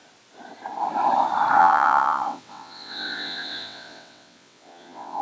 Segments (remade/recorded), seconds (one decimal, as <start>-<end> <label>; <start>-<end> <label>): 0.0-1.6 recorded; 1.6-5.2 remade